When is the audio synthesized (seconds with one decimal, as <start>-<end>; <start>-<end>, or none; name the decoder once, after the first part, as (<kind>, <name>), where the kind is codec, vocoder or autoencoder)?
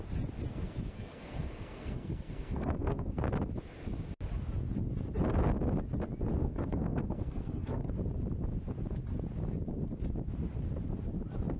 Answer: 0.5-3.3 (codec, SNAC); 6.4-8.0